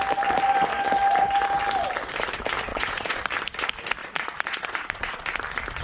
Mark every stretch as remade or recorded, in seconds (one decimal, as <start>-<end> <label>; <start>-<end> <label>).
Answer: 0.0-2.7 recorded; 2.7-3.2 remade; 3.2-4.0 recorded; 4.0-5.2 remade; 5.2-5.8 recorded